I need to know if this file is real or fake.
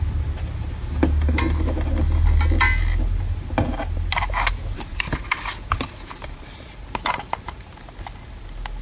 real